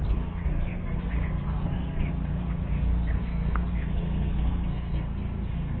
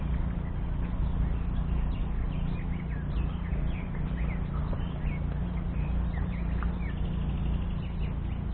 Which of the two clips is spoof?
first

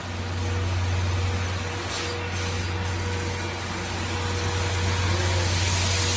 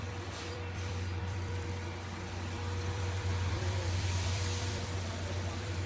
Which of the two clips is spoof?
second